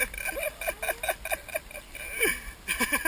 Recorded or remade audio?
recorded